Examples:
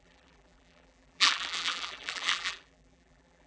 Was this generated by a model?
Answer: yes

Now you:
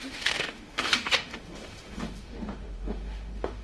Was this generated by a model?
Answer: yes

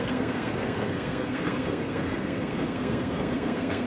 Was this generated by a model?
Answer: yes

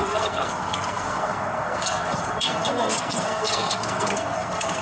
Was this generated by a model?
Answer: yes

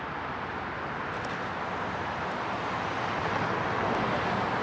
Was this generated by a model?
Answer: no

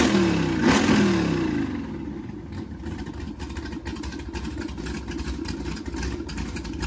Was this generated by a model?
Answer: no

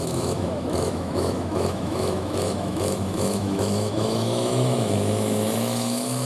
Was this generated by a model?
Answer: yes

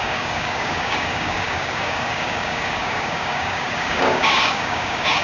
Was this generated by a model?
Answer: yes